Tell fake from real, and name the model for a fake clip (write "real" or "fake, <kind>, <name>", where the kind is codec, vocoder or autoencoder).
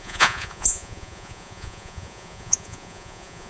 fake, vocoder, Vocos